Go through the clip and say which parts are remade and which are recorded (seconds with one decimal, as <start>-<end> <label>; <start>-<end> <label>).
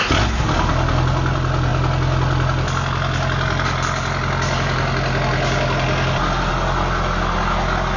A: 0.0-8.0 recorded